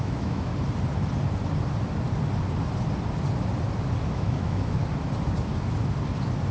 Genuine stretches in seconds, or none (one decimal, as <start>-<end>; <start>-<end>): 0.5-4.1; 4.8-6.5